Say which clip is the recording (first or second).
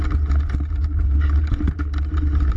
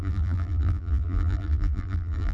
first